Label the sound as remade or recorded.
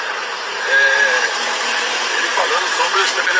remade